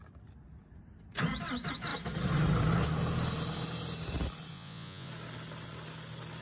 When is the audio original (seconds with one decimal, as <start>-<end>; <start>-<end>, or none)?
0.0-4.5; 5.1-6.4